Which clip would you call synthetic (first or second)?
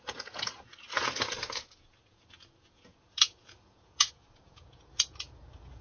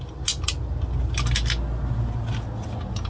first